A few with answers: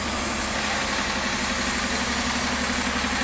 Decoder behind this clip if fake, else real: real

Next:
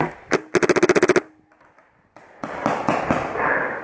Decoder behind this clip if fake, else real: real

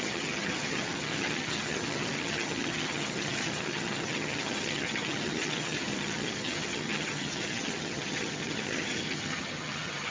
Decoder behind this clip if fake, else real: fake, vocoder, HiFi-GAN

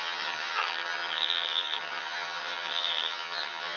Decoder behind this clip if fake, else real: fake, vocoder, HiFi-GAN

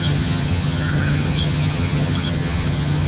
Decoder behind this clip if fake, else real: fake, vocoder, HiFi-GAN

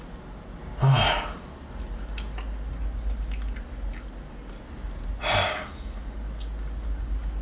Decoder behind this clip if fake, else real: real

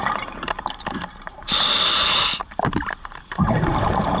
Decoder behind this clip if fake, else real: real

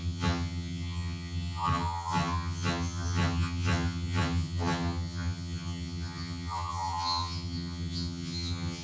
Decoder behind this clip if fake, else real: fake, vocoder, HiFi-GAN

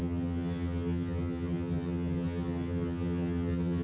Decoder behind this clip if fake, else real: fake, vocoder, HiFi-GAN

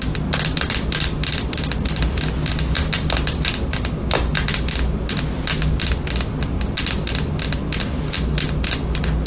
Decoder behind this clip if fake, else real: real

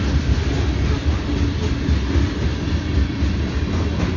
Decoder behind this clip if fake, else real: real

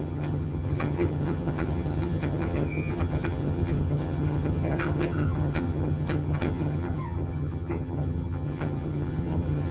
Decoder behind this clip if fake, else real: fake, vocoder, HiFi-GAN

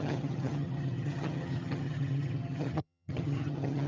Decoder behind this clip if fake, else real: fake, vocoder, HiFi-GAN